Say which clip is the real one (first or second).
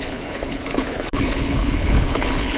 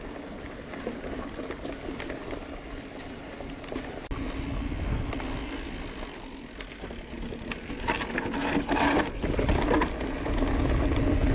second